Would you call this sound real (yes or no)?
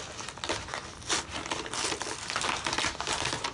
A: yes